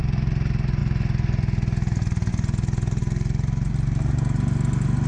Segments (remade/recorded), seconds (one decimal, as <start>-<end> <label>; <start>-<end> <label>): 0.0-5.1 recorded